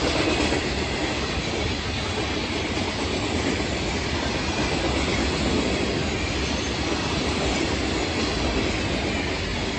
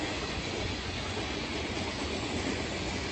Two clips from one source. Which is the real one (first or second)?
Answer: first